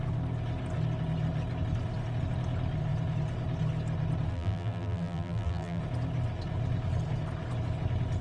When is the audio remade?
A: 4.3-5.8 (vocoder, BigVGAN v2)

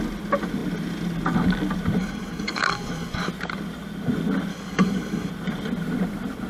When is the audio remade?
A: 2.0-3.3 (codec, DAC); 4.5-5.3

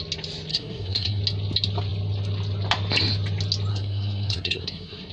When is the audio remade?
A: 0.5-1.2 (codec, SNAC); 3.7-5.1

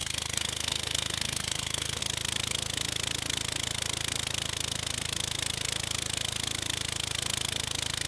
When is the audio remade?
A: 0.0-2.0 (codec, SNAC)